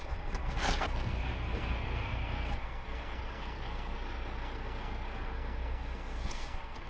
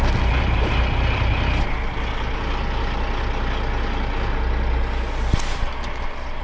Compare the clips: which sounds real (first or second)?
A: second